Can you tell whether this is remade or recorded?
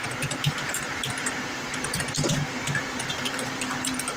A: remade